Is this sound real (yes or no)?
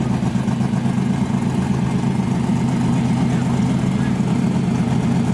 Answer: yes